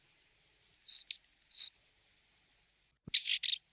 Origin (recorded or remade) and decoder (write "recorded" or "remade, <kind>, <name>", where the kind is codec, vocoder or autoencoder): recorded